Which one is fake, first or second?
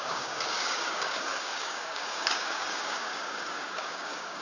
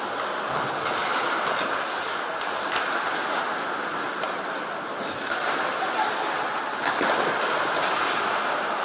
first